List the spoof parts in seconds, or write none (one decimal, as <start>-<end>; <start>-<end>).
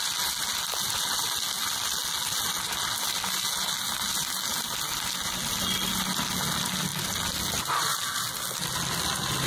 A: none